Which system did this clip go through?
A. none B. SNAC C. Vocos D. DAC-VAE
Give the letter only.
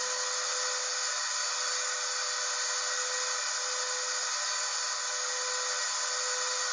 A